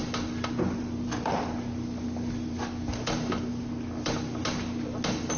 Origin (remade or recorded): recorded